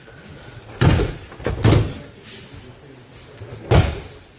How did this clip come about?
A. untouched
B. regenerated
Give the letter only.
A